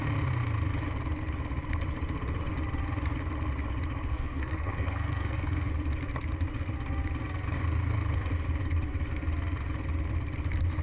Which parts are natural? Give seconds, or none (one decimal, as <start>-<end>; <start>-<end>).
0.0-4.1; 5.7-10.8